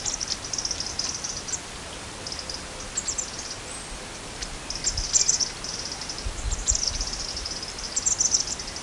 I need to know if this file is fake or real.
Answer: fake